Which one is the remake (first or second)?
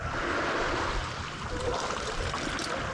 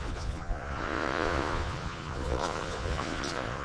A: second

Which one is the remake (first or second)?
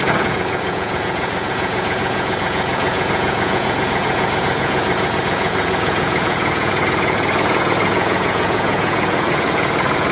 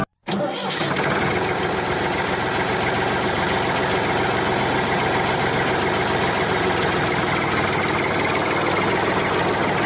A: first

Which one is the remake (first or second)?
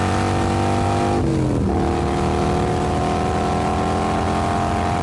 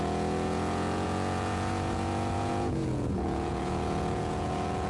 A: second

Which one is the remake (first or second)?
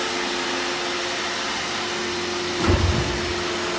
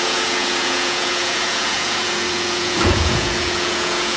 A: second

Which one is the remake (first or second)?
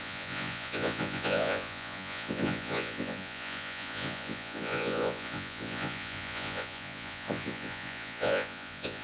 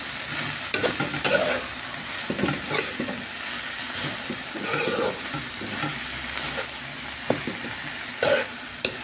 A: first